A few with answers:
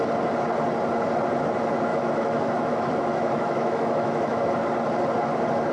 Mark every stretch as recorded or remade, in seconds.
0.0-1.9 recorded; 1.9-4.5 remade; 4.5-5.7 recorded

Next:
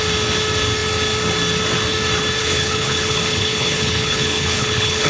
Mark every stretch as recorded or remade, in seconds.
0.0-2.4 recorded; 2.4-5.1 remade

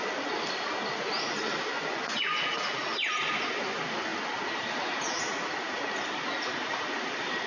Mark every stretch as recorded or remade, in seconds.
0.0-1.7 recorded; 1.7-2.4 remade; 2.4-7.5 recorded